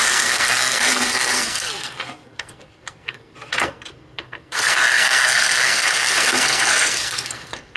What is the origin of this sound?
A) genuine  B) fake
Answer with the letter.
B